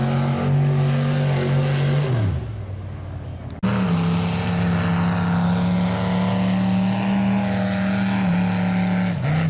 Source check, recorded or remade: recorded